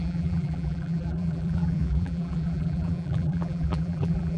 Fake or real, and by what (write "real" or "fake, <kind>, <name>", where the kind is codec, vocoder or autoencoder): fake, vocoder, BigVGAN v2